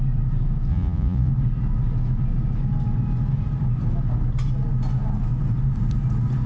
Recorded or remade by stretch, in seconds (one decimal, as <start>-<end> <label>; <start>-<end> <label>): 0.0-0.7 recorded; 0.7-1.3 remade; 1.3-6.5 recorded

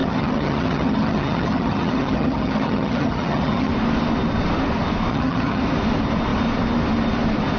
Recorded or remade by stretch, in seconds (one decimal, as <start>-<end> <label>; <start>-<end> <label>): 0.0-3.7 remade; 3.7-5.1 recorded; 5.1-5.6 remade; 5.6-7.6 recorded